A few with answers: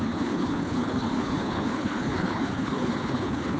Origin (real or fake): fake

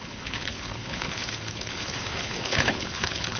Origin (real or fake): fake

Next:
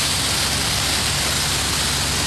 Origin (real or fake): real